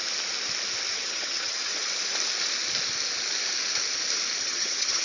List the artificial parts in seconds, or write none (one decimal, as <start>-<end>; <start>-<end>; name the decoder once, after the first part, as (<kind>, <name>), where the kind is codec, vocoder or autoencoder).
0.9-1.7 (vocoder, HiFi-GAN); 4.4-5.0